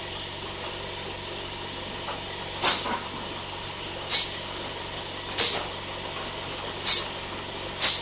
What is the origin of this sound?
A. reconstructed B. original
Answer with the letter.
B